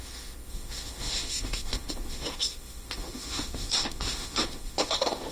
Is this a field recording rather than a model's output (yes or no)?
no